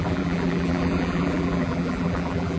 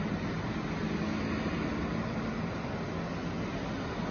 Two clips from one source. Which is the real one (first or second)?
second